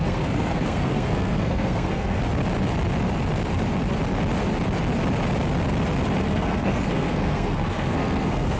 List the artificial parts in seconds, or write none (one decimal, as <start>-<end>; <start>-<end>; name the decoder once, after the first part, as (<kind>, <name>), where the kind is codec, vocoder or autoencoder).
0.0-2.2 (codec, SNAC); 6.2-8.6